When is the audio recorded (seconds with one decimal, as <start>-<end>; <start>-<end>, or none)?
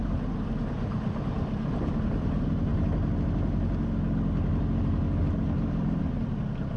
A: 0.0-6.8